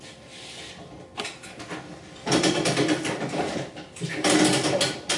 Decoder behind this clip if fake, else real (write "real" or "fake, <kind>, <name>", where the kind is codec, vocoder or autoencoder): real